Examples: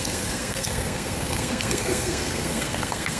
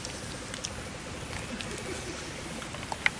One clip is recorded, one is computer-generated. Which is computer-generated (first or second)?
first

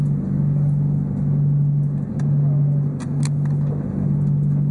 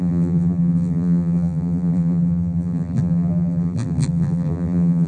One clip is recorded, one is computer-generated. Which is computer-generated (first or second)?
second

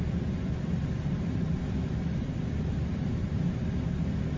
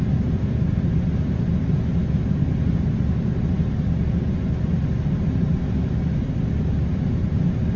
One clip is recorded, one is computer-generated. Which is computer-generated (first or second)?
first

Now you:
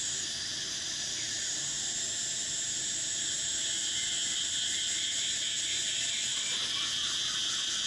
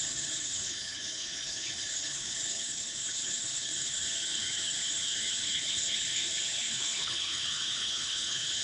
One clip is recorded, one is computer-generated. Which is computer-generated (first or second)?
second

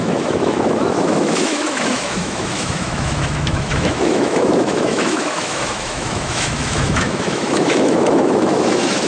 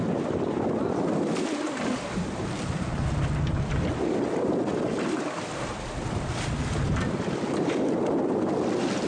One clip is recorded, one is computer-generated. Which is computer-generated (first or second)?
first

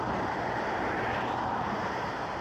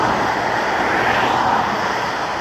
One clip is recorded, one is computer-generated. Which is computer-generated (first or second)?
first